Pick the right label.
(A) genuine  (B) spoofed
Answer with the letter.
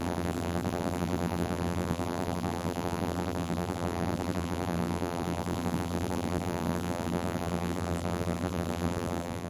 B